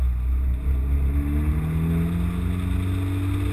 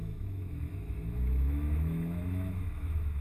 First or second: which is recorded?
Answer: first